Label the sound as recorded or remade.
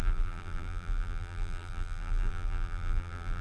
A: remade